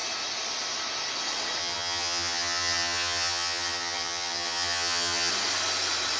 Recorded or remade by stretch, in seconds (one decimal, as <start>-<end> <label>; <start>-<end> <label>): 0.0-1.6 recorded; 1.6-5.3 remade; 5.3-6.2 recorded